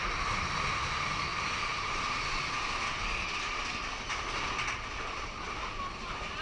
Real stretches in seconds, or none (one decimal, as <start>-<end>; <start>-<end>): 0.0-6.4